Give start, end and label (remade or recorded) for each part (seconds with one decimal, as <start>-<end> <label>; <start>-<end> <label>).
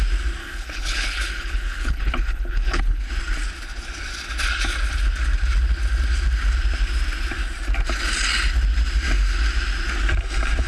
0.0-0.4 recorded; 0.4-3.0 remade; 3.0-10.7 recorded